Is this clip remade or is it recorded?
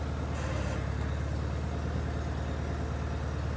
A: recorded